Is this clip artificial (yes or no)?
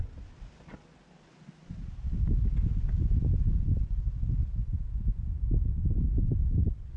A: no